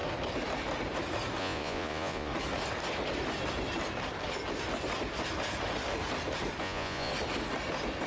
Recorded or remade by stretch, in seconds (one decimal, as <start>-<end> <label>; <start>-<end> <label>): 0.0-1.4 recorded; 1.4-2.3 remade; 2.3-6.6 recorded; 6.6-7.1 remade; 7.1-8.1 recorded